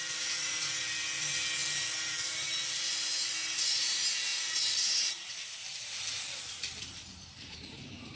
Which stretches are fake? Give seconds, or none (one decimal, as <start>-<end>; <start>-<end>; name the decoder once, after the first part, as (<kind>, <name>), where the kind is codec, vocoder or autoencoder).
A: 0.0-8.2 (vocoder, BigVGAN v2)